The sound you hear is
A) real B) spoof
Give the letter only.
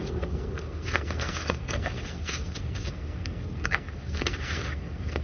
B